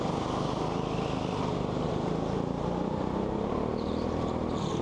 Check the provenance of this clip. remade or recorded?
recorded